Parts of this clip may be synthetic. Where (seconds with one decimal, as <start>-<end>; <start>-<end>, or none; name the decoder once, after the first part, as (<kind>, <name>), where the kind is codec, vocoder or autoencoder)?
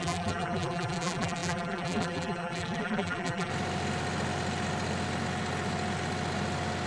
0.0-3.5 (vocoder, BigVGAN v2)